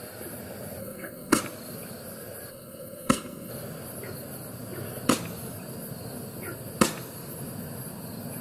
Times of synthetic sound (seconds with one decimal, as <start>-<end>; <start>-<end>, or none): 0.8-1.4; 2.5-3.5